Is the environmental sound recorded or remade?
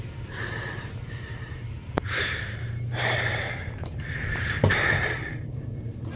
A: remade